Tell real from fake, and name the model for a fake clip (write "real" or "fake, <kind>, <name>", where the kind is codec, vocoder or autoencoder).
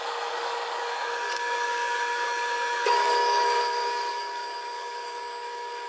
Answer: fake, codec, DAC